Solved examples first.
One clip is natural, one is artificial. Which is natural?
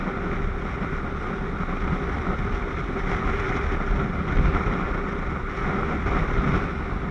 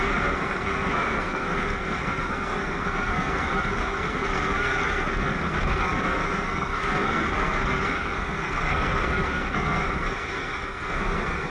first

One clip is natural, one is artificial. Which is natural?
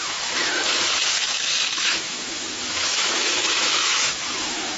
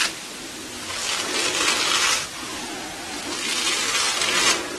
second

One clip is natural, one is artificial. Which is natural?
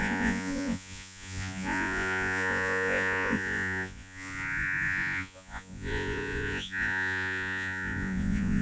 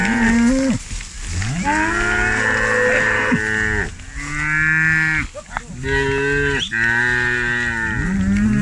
second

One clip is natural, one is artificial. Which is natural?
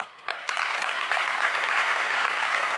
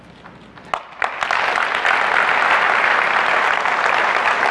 second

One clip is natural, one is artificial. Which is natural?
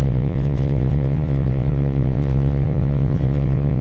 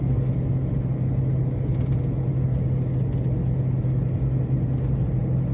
second